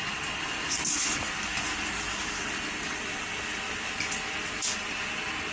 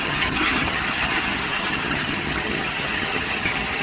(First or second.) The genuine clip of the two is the first